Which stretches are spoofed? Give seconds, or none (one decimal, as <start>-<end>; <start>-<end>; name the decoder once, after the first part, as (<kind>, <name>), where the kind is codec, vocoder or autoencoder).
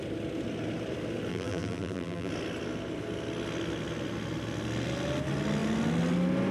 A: 1.3-2.3 (vocoder, BigVGAN v2)